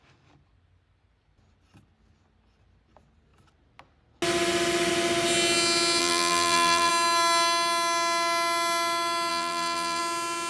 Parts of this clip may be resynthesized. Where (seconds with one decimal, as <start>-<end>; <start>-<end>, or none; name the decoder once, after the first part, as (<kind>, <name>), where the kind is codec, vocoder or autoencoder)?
6.0-6.9 (vocoder, BigVGAN v2); 9.3-10.0